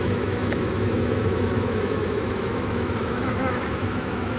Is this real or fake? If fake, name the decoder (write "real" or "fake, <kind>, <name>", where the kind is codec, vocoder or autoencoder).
fake, autoencoder, DAC-VAE